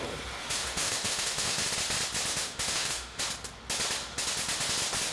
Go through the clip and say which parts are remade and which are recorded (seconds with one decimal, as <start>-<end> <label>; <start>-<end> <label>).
0.0-0.4 recorded; 0.4-1.6 remade; 1.6-2.3 recorded; 2.3-3.2 remade; 3.2-5.1 recorded